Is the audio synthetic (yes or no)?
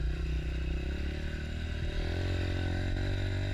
no